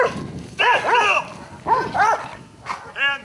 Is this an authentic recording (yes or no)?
yes